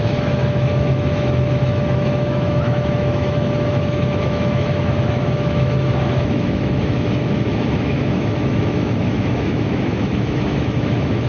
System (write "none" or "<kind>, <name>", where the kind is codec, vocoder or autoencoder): autoencoder, DAC-VAE